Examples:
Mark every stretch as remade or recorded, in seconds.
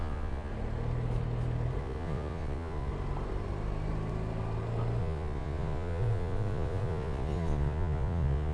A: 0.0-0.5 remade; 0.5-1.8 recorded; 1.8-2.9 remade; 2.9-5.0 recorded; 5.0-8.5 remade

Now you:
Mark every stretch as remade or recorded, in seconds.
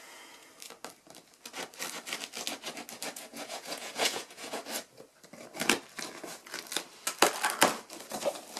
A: 0.0-0.5 remade; 0.5-3.1 recorded; 3.1-4.6 remade; 4.6-8.6 recorded